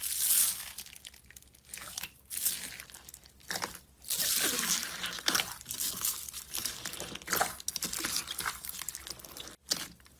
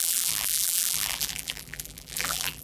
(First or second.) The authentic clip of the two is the first